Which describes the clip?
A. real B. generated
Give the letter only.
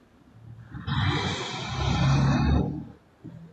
A